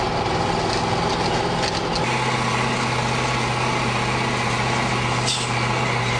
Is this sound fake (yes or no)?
no